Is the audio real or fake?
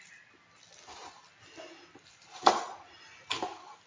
real